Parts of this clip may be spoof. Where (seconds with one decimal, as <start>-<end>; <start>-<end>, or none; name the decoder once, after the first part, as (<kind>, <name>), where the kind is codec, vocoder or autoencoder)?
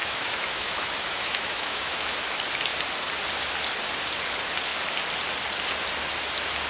0.0-2.1 (autoencoder, DAC-VAE)